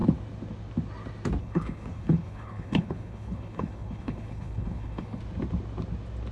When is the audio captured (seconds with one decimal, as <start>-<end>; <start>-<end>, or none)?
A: 0.0-1.4; 5.2-6.3